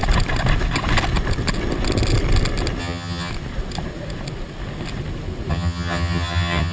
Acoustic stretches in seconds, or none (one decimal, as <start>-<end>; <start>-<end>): 0.0-2.8; 3.3-5.5